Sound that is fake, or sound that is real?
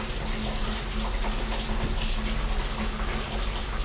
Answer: real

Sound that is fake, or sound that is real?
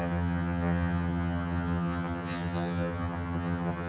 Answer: fake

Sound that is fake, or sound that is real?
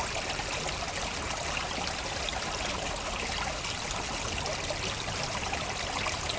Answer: real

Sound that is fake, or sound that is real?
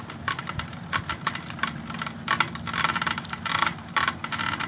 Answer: real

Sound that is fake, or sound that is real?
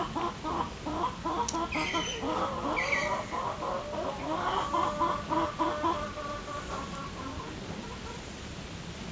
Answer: real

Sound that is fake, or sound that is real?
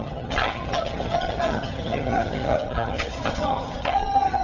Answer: fake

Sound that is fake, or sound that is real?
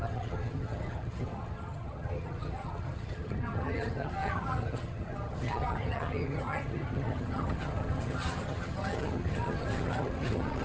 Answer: fake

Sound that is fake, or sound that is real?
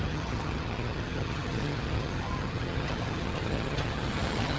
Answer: fake